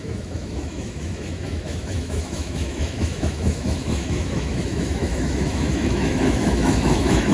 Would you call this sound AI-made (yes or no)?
yes